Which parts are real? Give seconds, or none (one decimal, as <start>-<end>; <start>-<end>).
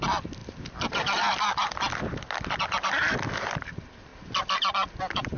0.0-5.4